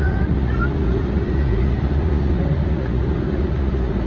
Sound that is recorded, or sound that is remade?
remade